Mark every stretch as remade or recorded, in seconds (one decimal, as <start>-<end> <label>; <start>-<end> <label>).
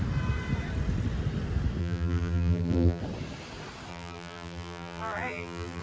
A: 0.0-1.8 recorded; 1.8-3.0 remade; 3.0-3.9 recorded; 3.9-5.8 remade